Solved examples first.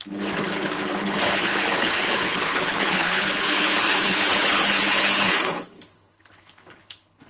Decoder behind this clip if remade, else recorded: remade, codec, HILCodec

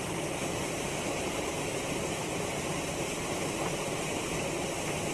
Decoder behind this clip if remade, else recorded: recorded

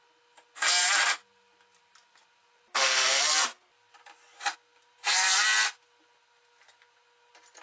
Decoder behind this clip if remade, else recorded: recorded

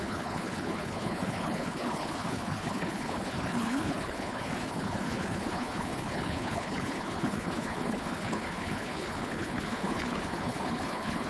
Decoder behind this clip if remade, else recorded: remade, codec, HILCodec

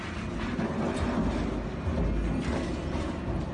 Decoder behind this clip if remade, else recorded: recorded